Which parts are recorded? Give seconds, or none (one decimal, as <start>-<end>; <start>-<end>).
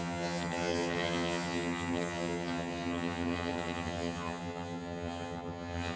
none